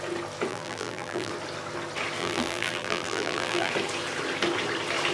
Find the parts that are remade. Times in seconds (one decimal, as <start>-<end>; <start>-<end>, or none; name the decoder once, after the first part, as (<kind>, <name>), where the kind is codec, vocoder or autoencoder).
0.5-1.3 (vocoder, BigVGAN v2); 2.2-3.7